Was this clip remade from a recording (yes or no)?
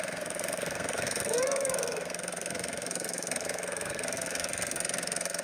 yes